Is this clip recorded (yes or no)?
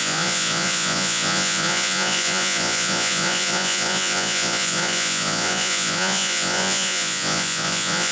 no